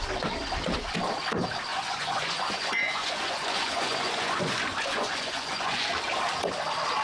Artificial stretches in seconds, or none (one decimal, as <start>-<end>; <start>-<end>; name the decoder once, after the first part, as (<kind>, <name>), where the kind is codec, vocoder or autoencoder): 1.7-5.9 (vocoder, Vocos)